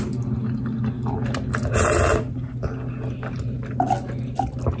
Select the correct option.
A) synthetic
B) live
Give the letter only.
B